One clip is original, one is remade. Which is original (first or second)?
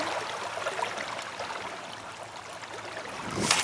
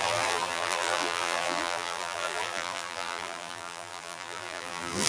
first